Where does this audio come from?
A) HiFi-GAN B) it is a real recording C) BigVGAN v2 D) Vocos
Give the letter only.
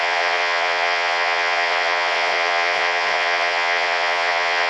D